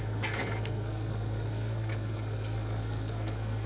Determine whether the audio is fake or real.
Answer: fake